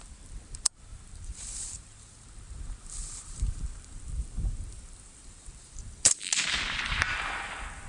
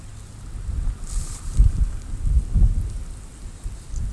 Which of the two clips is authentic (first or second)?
second